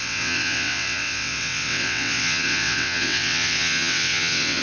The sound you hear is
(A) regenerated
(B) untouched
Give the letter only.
A